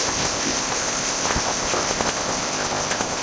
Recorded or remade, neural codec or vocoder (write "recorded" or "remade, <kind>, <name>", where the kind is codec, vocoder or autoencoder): remade, codec, ZipCodec